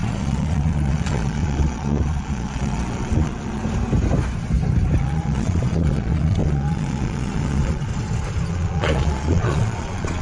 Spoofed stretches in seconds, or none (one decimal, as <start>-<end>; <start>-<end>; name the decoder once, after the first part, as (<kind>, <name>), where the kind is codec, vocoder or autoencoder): 0.0-3.6 (vocoder, Vocos); 5.0-7.9; 8.5-10.2